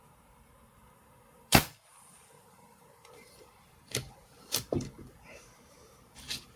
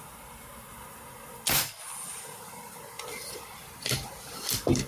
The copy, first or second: first